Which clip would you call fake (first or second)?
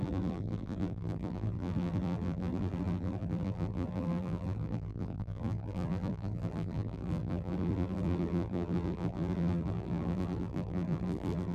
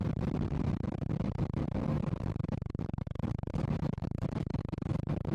first